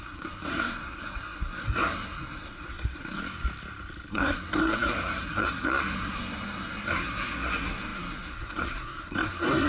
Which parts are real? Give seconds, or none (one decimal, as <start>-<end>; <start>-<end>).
3.2-4.1